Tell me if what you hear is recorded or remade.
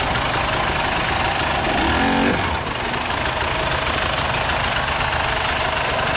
recorded